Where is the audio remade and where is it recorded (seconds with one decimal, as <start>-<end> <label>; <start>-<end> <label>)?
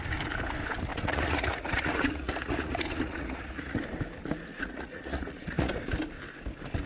0.0-0.9 recorded; 0.9-3.8 remade; 3.8-4.5 recorded; 4.5-5.8 remade; 5.8-6.9 recorded